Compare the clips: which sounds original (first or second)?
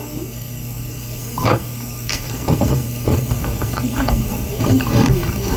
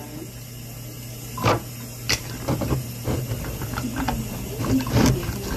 second